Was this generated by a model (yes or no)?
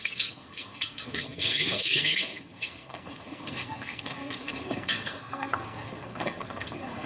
yes